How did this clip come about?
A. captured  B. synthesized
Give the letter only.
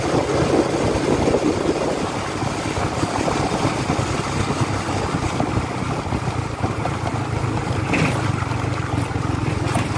A